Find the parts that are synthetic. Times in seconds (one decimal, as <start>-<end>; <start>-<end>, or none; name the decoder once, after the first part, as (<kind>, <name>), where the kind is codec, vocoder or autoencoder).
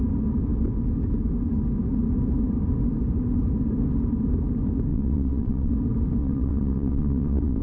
4.9-5.7 (vocoder, WaveNeXt); 6.2-7.6